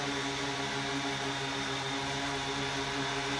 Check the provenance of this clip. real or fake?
real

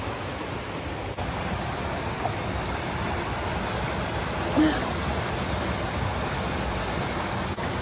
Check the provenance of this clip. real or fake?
real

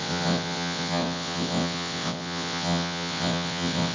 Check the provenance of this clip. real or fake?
fake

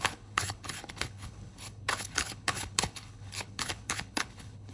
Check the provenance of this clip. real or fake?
fake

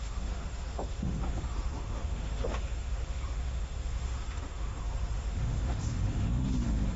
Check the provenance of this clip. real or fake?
fake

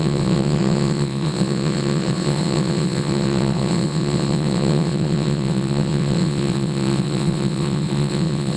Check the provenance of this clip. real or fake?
fake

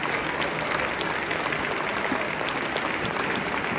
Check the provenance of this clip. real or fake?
real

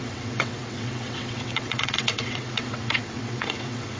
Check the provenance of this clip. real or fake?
fake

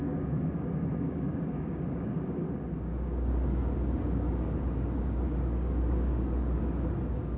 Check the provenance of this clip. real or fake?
fake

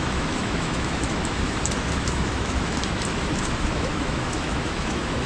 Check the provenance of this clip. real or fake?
fake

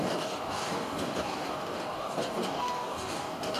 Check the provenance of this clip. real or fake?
fake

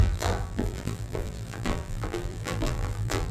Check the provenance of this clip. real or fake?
fake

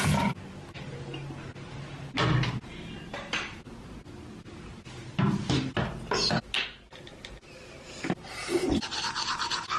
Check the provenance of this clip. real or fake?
real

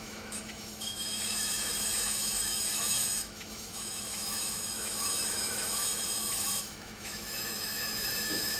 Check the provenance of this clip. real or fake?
fake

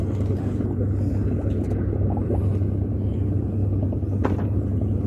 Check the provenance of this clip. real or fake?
real